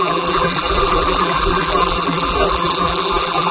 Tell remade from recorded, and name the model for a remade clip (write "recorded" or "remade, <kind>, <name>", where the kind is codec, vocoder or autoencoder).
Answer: remade, vocoder, BigVGAN v2